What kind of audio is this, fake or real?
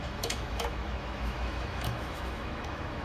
fake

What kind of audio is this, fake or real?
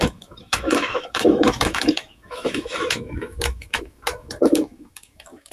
fake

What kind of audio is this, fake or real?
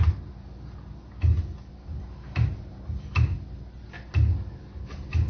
real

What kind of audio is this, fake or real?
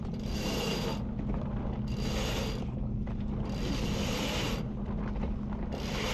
real